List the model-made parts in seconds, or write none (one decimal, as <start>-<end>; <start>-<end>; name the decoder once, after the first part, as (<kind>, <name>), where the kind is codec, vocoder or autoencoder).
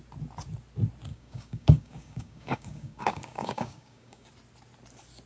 1.1-4.3 (codec, DAC)